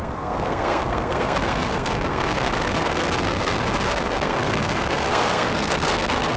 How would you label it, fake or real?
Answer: fake